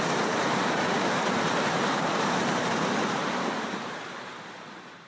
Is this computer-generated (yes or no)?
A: yes